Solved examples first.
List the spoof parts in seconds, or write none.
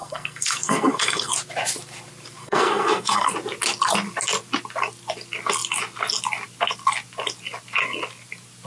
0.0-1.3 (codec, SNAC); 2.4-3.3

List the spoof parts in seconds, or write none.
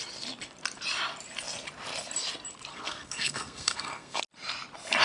2.7-4.2 (codec, SNAC)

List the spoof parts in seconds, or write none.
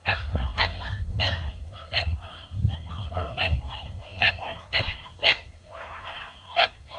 0.0-7.0 (codec, SNAC)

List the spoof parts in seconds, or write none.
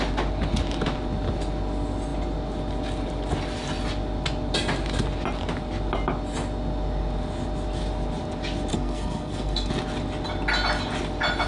8.7-9.7 (codec, SNAC)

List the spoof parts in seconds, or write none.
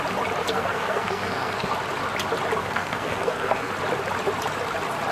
0.4-1.7 (codec, SNAC); 2.6-3.7